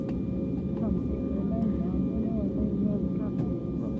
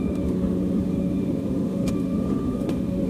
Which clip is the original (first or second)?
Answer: first